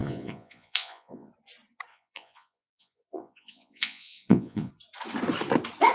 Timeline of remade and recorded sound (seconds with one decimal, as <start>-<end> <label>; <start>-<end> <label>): 0.0-1.3 remade; 1.3-1.9 recorded; 1.9-4.7 remade; 4.7-5.9 recorded